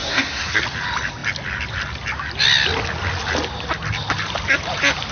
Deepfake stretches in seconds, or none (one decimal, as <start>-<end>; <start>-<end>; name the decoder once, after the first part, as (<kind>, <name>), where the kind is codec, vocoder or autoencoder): 0.0-0.6 (codec, SNAC)